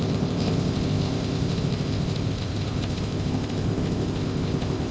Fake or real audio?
fake